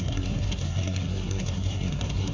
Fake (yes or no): yes